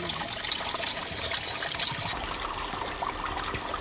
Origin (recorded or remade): recorded